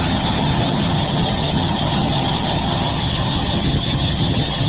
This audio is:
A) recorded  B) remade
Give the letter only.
B